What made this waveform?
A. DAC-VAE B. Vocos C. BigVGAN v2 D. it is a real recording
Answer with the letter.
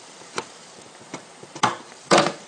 C